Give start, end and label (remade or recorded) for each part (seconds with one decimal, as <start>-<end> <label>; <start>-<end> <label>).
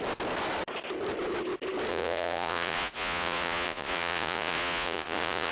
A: 0.0-1.9 recorded; 1.9-5.5 remade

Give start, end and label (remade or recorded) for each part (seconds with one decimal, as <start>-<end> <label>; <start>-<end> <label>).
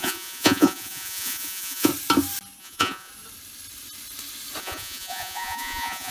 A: 0.0-1.9 remade; 1.9-2.6 recorded; 2.6-3.1 remade; 3.1-4.6 recorded; 4.6-6.1 remade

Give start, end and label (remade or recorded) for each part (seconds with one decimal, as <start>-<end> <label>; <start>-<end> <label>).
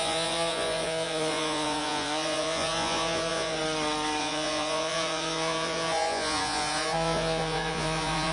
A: 0.0-3.6 remade; 3.6-4.2 recorded; 4.2-8.3 remade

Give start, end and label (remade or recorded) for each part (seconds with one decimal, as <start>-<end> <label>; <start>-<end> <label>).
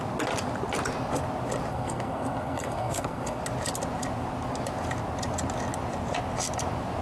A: 0.0-1.7 recorded; 1.7-3.4 remade; 3.4-7.0 recorded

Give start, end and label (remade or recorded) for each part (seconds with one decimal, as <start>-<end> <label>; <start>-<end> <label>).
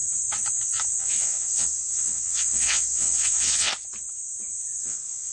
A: 0.0-1.0 recorded; 1.0-3.7 remade; 3.7-4.8 recorded; 4.8-5.3 remade